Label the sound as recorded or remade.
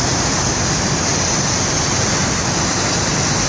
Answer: recorded